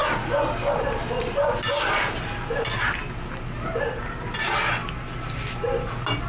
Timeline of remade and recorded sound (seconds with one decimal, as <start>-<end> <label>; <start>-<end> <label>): 0.0-6.3 recorded